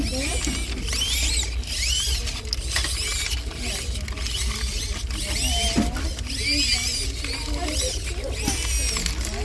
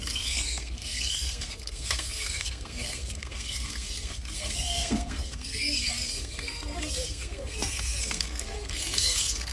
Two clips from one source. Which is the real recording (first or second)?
first